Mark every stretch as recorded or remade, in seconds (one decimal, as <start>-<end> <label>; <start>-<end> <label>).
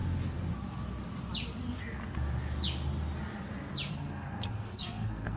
0.0-3.9 recorded; 3.9-5.4 remade